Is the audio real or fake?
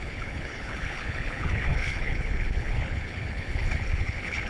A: fake